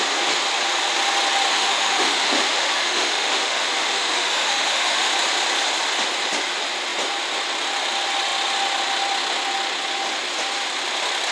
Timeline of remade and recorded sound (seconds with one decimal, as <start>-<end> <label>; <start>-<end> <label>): 0.0-1.5 recorded; 1.5-5.1 remade; 5.1-11.3 recorded